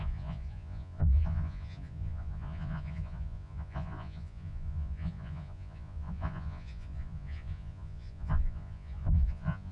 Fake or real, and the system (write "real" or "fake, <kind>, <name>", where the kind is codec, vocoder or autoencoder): fake, vocoder, Vocos